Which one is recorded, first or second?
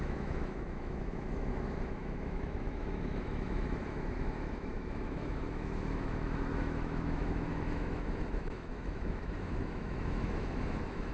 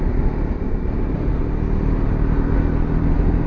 second